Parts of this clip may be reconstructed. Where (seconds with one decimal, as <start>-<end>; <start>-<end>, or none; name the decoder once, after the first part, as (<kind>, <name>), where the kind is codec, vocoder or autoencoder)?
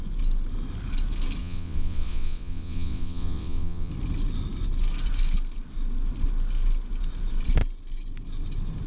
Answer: 1.4-3.9 (vocoder, WaveNeXt)